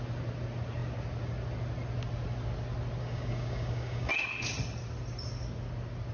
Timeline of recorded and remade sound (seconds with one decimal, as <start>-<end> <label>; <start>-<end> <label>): 0.0-3.0 recorded; 3.0-4.1 remade; 4.1-6.1 recorded